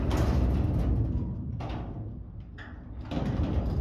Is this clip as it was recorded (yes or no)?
yes